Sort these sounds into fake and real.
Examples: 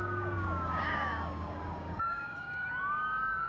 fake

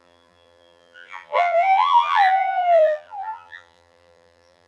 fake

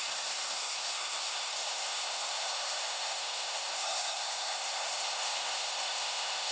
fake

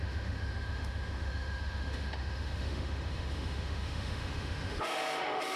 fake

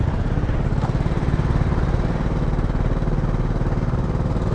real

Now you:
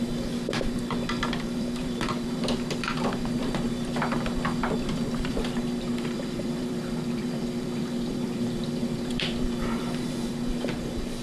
fake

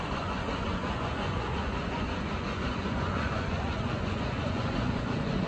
fake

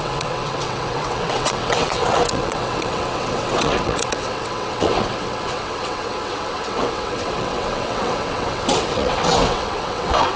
fake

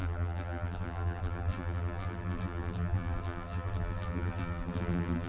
fake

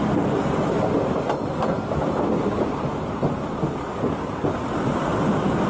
real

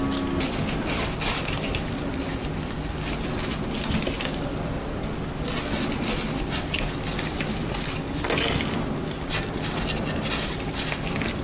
real